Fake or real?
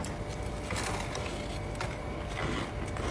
real